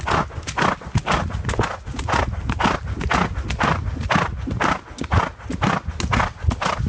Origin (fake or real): real